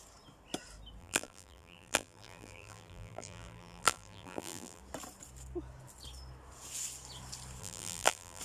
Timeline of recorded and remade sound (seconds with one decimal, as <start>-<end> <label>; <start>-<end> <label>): 0.0-1.0 recorded; 1.0-4.8 remade; 4.8-7.6 recorded; 7.6-8.4 remade